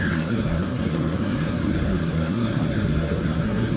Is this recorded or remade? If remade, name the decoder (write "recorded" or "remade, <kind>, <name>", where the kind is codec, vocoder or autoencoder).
remade, codec, SNAC